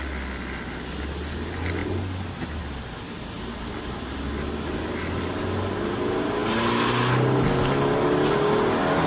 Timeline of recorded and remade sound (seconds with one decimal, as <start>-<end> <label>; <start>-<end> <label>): 0.0-9.1 recorded